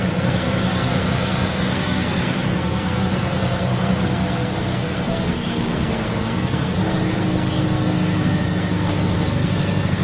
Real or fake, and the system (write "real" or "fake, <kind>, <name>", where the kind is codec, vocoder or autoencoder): fake, codec, SNAC